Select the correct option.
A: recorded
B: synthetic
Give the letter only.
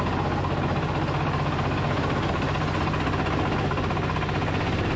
A